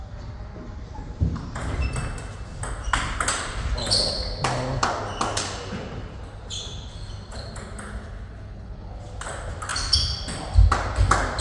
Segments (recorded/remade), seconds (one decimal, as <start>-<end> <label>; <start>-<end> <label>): 0.0-8.0 recorded; 8.0-9.0 remade; 9.0-11.4 recorded

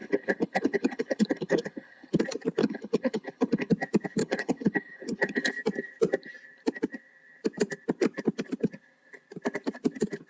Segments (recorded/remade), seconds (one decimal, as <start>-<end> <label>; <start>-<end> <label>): 0.0-2.2 remade; 2.2-2.6 recorded; 2.6-3.7 remade; 3.7-4.2 recorded; 4.2-5.5 remade; 5.5-10.3 recorded